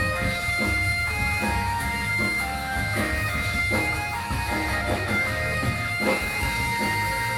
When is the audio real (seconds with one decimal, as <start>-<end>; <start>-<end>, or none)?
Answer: none